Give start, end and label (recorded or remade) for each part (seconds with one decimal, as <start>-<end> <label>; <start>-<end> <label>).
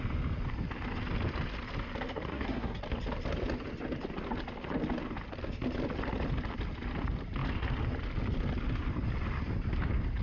0.0-2.3 recorded; 2.3-2.8 remade; 2.8-10.2 recorded